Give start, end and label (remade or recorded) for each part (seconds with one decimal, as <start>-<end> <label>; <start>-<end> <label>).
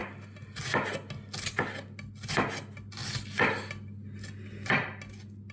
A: 0.0-5.5 recorded